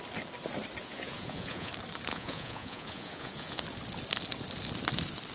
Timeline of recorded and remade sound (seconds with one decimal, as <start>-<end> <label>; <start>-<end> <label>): 0.0-0.8 recorded; 0.8-1.7 remade; 1.7-2.1 recorded; 2.1-3.6 remade; 3.6-5.3 recorded

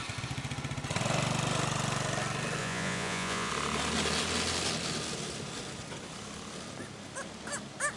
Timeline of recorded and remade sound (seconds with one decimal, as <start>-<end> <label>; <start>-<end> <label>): 0.0-2.6 recorded; 2.6-3.5 remade; 3.5-8.0 recorded

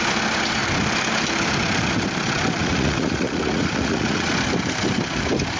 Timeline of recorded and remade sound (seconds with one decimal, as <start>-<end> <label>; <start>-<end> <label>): 0.0-2.6 recorded; 2.6-4.3 remade; 4.3-5.6 recorded

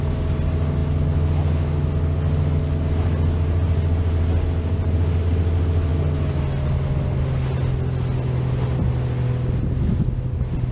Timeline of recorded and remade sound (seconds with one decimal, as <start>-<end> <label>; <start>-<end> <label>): 0.0-10.7 recorded

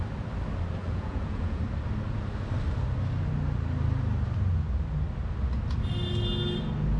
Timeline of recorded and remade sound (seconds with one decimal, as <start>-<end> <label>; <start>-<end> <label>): 0.0-0.8 recorded; 0.8-1.6 remade; 1.6-7.0 recorded

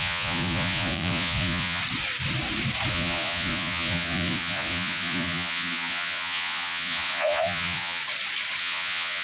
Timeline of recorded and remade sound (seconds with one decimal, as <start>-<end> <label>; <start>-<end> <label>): 0.0-1.8 remade; 1.8-2.9 recorded; 2.9-8.0 remade; 8.0-8.6 recorded; 8.6-9.2 remade